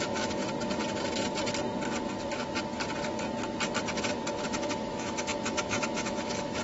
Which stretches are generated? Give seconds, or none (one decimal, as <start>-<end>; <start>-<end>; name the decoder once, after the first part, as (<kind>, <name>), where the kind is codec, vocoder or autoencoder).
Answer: 0.0-0.4 (autoencoder, DAC-VAE); 4.4-6.6